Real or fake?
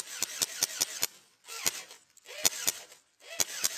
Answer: fake